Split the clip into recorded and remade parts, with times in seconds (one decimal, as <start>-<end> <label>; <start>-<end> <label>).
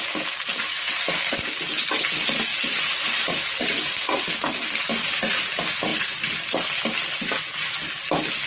0.0-8.5 recorded